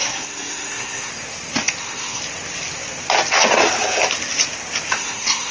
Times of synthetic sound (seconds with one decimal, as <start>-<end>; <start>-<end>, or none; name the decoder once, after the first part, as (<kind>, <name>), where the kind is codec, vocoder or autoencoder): 0.0-1.1 (codec, SNAC); 1.8-2.2; 4.9-5.5